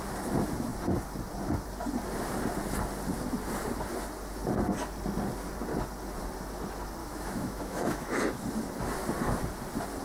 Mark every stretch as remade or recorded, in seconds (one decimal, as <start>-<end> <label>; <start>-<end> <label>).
0.0-7.0 recorded; 7.0-8.2 remade; 8.2-10.0 recorded